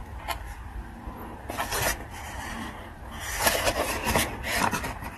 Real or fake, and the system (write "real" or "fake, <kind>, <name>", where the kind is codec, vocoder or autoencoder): fake, vocoder, BigVGAN v2